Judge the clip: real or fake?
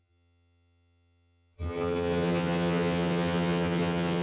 fake